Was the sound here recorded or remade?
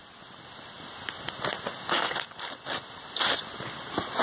recorded